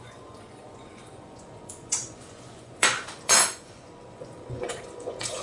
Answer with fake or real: fake